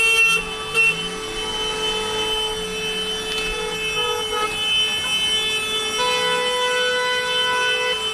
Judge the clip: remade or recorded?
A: recorded